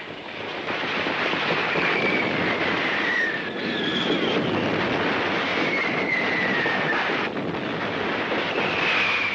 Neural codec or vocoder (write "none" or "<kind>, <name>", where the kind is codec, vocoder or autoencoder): none